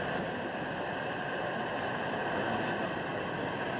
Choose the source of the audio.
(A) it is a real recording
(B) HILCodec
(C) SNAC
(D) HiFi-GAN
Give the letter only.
A